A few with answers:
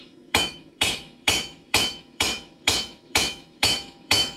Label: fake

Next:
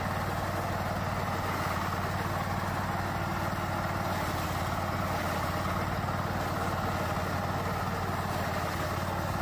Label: real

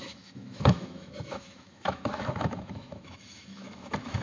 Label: fake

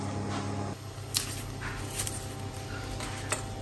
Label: real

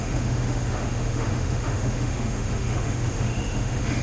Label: fake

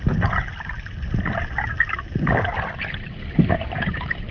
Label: real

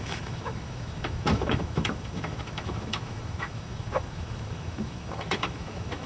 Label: fake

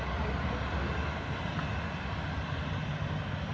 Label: real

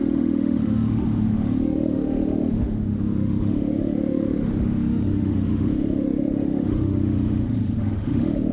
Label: fake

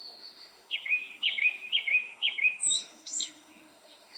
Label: fake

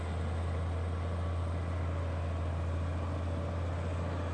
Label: real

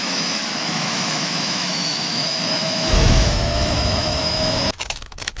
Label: fake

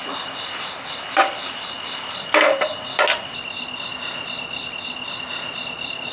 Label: real